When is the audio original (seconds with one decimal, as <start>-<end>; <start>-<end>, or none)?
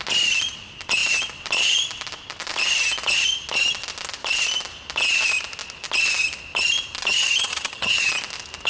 0.0-7.1; 8.1-8.7